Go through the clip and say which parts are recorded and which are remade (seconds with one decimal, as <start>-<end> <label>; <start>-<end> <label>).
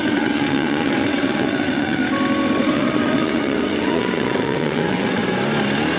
0.0-2.0 remade; 2.0-2.6 recorded; 2.6-5.2 remade; 5.2-6.0 recorded